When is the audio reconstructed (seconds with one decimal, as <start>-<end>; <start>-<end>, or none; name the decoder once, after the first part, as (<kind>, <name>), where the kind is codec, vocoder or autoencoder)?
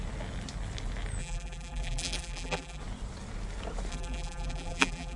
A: 1.2-2.8 (vocoder, BigVGAN v2); 3.9-5.2